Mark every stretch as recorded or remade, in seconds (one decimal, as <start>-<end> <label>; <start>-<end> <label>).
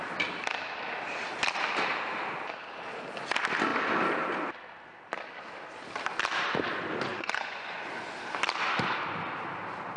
0.0-7.1 recorded; 7.1-7.9 remade; 7.9-10.0 recorded